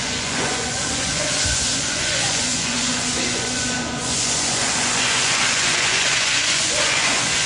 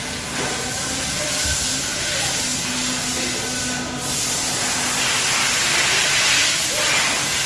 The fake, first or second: first